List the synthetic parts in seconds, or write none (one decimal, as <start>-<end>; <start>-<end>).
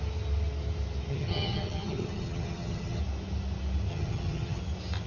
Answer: 1.1-3.0; 3.9-4.6